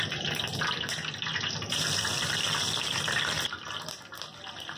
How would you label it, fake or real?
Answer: real